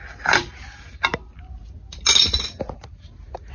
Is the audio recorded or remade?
recorded